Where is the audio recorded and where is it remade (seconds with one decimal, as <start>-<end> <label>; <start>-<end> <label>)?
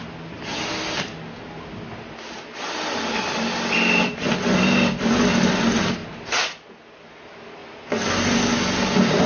0.0-9.3 recorded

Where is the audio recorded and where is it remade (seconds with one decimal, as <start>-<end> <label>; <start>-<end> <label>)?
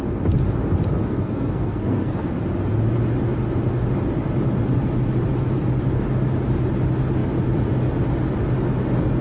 0.0-1.1 recorded; 1.1-2.3 remade; 2.3-9.2 recorded